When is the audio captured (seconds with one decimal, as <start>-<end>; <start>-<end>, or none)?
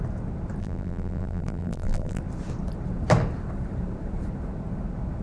0.0-0.6; 2.2-5.2